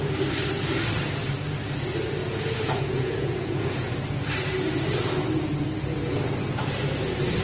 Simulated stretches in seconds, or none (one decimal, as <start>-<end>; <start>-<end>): 2.2-3.9